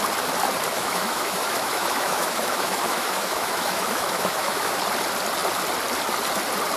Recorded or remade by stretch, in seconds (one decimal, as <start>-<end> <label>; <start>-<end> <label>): 0.0-0.7 recorded; 0.7-4.8 remade; 4.8-6.8 recorded